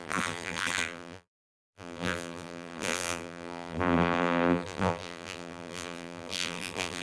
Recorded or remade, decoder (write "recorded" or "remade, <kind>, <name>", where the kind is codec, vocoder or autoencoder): remade, vocoder, BigVGAN v2